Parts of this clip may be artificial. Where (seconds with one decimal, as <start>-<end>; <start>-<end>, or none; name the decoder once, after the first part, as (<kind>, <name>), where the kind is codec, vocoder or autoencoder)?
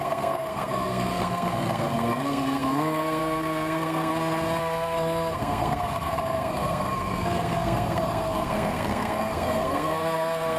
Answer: 0.0-4.1 (codec, SNAC); 4.6-10.6